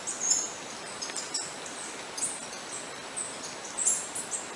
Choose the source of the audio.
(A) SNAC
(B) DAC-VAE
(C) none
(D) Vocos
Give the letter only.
C